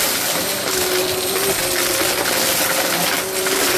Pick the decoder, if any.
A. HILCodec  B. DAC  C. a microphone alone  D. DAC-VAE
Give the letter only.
C